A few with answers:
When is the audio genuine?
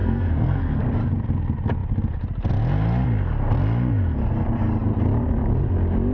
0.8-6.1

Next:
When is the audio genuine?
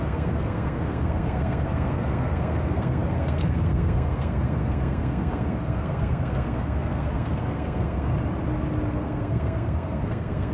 8.1-8.9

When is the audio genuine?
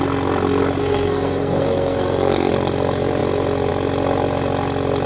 0.0-0.8; 2.5-5.1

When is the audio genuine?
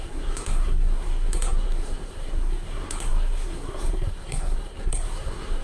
none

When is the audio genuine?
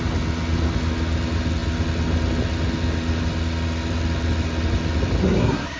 0.0-5.2